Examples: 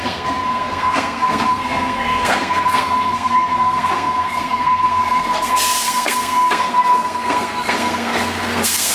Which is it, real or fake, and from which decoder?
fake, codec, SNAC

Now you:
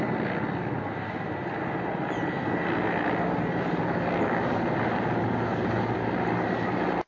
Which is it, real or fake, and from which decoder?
real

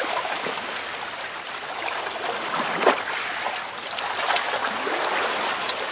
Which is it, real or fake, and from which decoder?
real